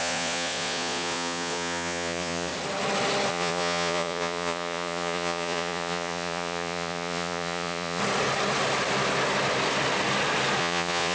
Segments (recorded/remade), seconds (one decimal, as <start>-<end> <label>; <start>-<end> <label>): 0.0-2.5 remade; 2.5-3.3 recorded; 3.3-8.0 remade; 8.0-10.6 recorded; 10.6-11.1 remade